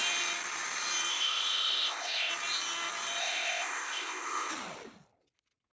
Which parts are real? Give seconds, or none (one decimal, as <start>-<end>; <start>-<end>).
0.0-1.1; 2.3-3.2; 4.5-5.8